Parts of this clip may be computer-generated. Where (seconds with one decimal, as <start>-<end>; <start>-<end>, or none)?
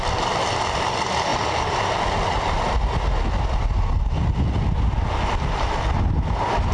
none